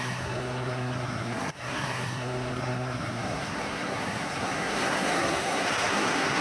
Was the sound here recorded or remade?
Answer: remade